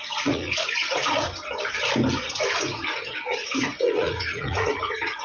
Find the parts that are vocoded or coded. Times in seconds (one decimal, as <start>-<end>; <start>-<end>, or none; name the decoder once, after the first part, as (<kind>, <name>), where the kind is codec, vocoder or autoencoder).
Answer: 0.0-1.3 (vocoder, Vocos); 2.2-5.2